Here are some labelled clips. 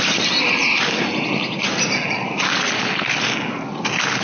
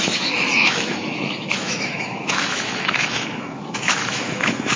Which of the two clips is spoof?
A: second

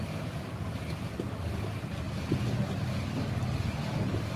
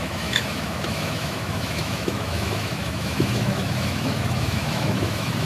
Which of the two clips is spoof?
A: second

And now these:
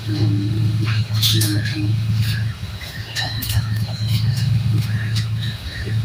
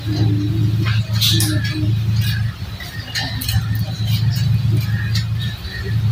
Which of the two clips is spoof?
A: first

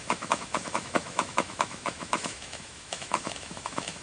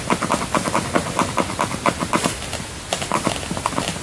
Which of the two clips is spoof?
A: first